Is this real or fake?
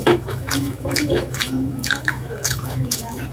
fake